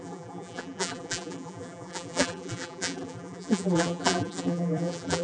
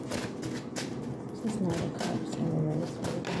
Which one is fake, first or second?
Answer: first